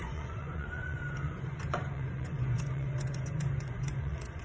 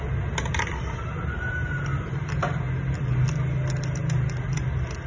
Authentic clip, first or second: second